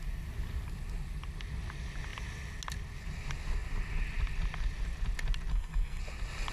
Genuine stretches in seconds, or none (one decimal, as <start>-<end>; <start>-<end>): 0.0-5.5; 6.0-6.5